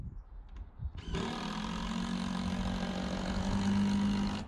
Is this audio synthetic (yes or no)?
no